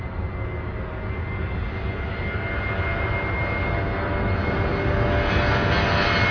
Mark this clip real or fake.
real